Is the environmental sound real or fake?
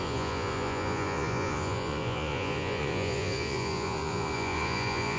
fake